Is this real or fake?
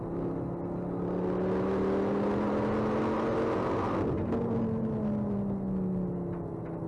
real